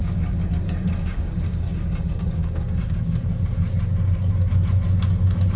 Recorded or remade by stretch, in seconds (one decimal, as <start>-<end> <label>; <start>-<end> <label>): 0.0-3.3 remade; 3.3-5.6 recorded